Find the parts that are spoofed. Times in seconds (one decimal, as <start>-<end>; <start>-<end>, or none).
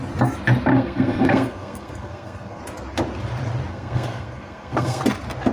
0.7-2.6; 3.7-5.0